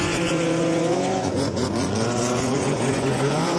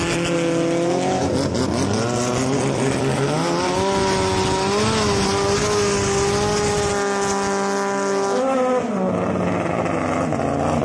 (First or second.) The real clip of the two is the second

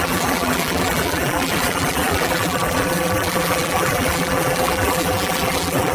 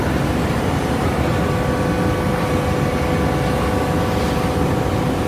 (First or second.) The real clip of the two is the second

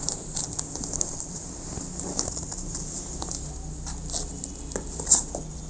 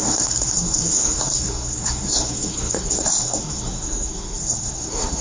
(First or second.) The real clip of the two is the first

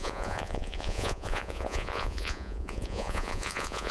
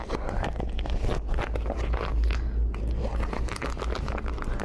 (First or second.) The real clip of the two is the second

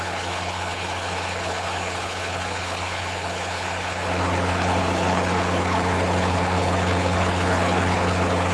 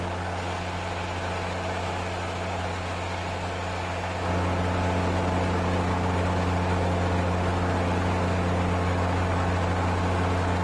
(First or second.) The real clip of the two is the second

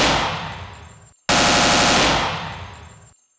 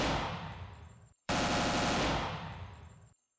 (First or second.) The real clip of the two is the first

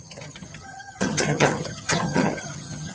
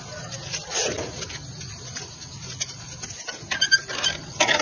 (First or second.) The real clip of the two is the second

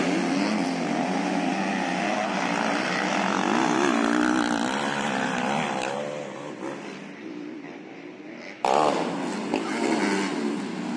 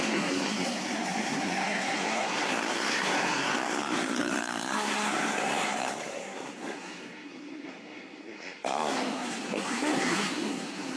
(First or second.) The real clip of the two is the first